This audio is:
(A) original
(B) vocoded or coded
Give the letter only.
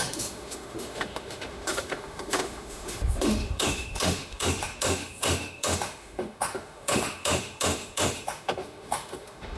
B